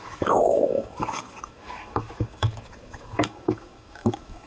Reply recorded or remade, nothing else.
remade